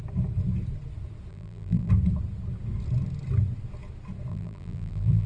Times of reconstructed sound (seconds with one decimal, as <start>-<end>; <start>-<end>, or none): 1.3-1.9; 4.3-5.3